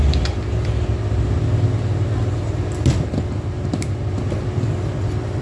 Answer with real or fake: real